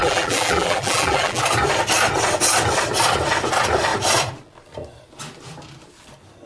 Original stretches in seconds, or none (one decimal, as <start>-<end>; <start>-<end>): 1.4-6.5